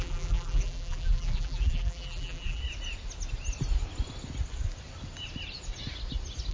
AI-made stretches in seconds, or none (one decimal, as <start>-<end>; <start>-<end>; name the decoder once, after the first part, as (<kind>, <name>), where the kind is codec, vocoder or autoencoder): 0.0-2.6 (vocoder, BigVGAN v2)